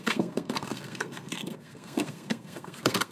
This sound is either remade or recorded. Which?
remade